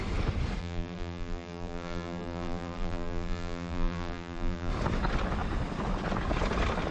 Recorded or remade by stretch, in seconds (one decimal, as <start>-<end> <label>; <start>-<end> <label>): 0.0-0.6 recorded; 0.6-4.7 remade; 4.7-6.9 recorded